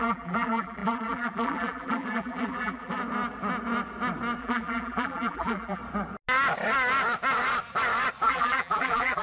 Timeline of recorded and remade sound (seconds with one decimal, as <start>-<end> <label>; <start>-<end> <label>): 0.0-3.0 remade; 3.0-4.4 recorded; 4.4-5.8 remade; 5.8-8.2 recorded; 8.2-9.2 remade